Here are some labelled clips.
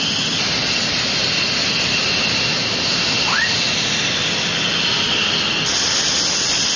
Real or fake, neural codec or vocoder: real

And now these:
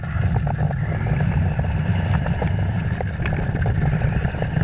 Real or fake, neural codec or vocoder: real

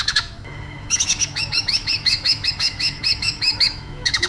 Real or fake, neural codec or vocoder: fake, autoencoder, DAC-VAE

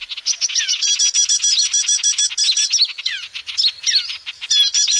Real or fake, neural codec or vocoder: real